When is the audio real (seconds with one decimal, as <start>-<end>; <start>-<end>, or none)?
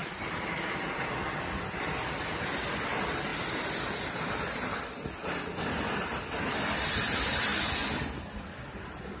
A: 0.0-9.2